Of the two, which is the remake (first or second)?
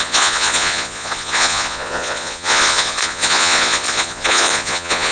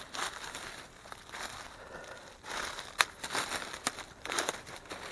first